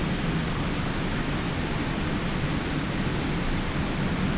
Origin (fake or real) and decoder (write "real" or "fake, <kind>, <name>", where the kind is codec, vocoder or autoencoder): real